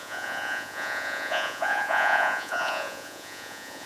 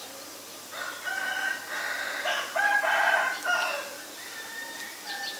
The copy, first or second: first